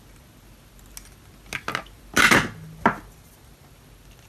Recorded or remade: recorded